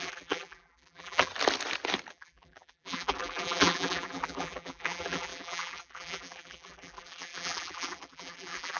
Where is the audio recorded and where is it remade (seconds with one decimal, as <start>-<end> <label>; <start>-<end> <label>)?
0.0-1.3 remade; 1.3-2.1 recorded; 2.1-8.8 remade